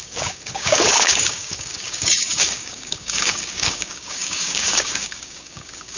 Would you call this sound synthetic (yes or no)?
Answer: yes